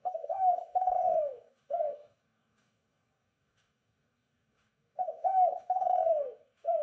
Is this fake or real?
fake